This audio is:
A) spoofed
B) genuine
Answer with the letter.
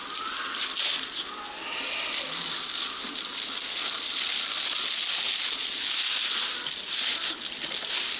B